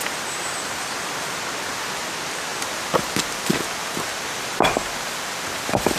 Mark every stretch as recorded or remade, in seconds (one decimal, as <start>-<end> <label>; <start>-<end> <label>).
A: 0.0-6.0 recorded